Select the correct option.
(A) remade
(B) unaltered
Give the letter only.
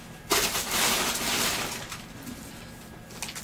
B